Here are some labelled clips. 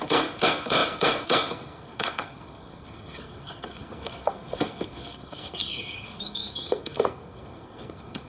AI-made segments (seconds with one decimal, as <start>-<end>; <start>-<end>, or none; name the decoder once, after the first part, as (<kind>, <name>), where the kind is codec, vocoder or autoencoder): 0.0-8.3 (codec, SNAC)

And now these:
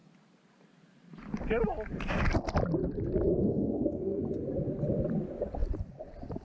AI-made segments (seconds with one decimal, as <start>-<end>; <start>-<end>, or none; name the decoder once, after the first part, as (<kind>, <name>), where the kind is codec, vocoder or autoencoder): 3.3-4.2 (codec, SNAC)

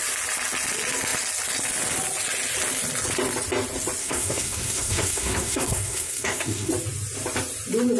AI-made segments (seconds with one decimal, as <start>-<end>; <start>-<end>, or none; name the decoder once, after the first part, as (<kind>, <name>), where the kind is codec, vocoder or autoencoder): 4.0-6.7 (codec, SNAC)

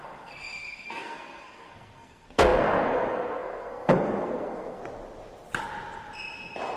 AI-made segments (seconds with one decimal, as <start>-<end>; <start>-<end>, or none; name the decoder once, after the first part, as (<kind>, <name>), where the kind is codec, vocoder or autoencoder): 0.0-4.8 (codec, SNAC)

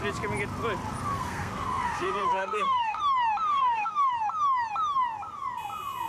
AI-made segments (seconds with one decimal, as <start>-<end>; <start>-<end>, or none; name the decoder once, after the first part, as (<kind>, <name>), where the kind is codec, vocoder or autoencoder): 1.1-3.0 (codec, SNAC); 3.5-4.1